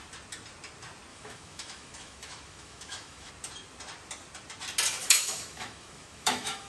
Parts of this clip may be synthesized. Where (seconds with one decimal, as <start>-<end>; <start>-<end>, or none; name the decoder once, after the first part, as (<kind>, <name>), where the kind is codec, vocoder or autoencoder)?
1.1-3.3 (autoencoder, DAC-VAE); 5.0-6.7